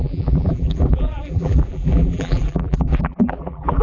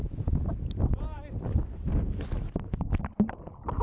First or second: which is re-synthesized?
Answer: first